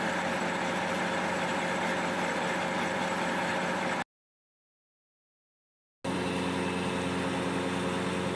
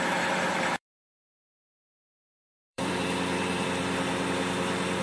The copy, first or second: second